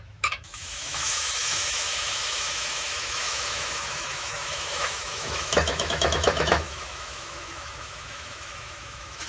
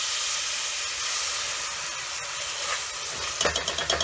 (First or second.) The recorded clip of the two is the second